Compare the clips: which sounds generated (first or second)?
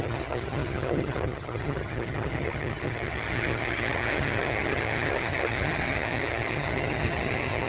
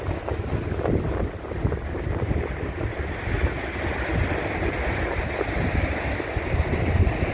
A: first